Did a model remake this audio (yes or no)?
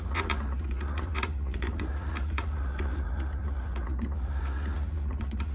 yes